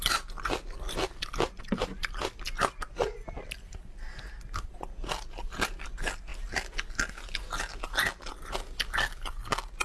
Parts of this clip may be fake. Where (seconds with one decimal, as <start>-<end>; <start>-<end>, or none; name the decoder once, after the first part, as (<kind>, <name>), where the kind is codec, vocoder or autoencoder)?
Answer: none